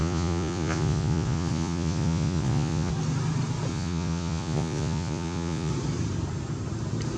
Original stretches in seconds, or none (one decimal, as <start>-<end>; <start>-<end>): 2.9-3.7; 5.7-7.2